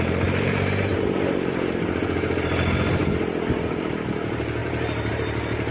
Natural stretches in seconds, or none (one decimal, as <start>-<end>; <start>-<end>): 3.0-3.8